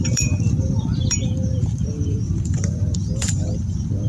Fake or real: fake